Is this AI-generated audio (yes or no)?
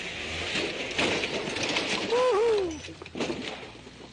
no